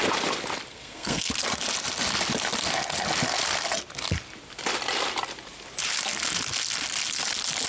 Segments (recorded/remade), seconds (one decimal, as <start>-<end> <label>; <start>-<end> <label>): 0.0-0.7 recorded; 0.7-1.3 remade; 1.3-7.7 recorded